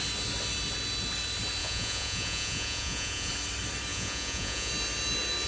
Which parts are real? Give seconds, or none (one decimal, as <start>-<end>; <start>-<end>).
0.0-1.6; 3.3-3.9; 4.7-5.5